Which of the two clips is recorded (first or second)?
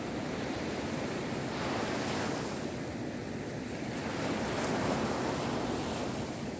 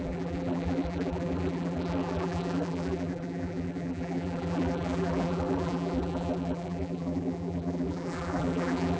first